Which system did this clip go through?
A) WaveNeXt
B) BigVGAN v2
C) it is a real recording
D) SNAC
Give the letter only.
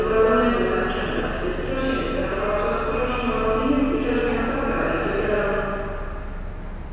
C